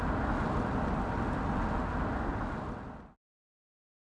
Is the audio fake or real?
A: real